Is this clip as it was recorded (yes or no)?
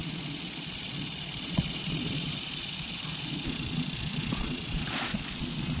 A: no